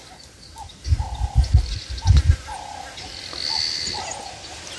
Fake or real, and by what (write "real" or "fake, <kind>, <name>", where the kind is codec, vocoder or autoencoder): real